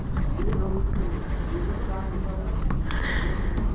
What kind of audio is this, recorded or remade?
recorded